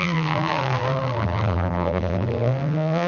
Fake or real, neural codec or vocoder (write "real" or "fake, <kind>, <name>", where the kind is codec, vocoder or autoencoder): fake, vocoder, BigVGAN v2